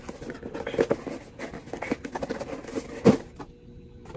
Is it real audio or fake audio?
real